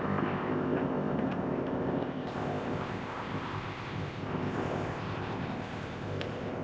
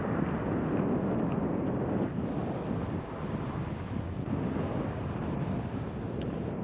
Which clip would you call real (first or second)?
second